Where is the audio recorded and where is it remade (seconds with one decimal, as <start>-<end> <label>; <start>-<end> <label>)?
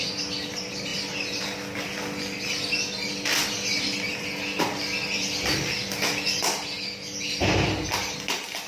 0.0-8.7 recorded